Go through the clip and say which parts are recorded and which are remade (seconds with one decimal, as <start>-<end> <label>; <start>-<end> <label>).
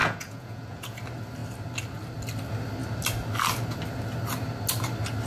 0.0-1.0 remade; 1.0-5.3 recorded